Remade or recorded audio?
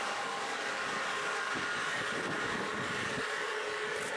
remade